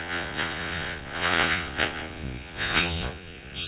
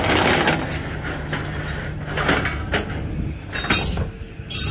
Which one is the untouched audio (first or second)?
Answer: second